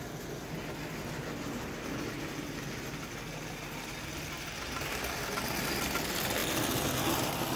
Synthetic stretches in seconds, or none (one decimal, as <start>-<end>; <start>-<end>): none